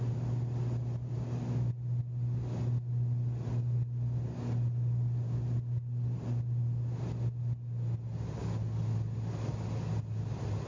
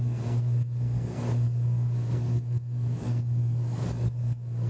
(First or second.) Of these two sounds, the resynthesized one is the second